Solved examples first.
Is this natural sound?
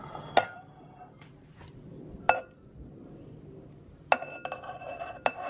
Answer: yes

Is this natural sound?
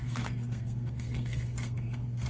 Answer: no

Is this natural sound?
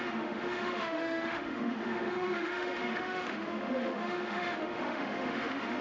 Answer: no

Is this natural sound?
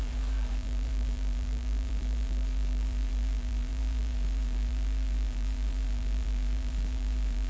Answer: no